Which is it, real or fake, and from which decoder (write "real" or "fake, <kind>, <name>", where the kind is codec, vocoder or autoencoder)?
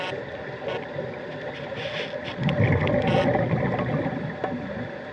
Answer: real